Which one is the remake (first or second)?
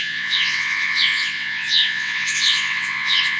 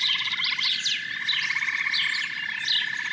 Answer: first